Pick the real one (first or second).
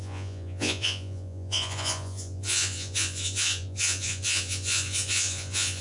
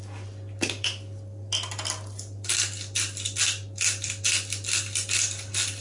second